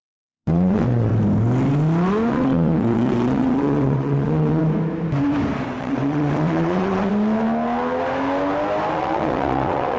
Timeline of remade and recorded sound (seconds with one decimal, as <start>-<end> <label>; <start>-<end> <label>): 0.0-1.1 remade; 1.1-2.3 recorded; 2.3-4.6 remade; 4.6-5.8 recorded; 5.8-7.1 remade; 7.1-8.9 recorded; 8.9-10.0 remade